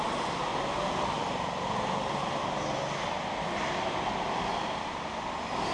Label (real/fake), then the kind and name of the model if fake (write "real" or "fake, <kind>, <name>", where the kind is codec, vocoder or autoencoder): real